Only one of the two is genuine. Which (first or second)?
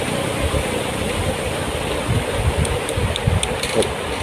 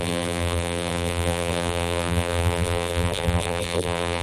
first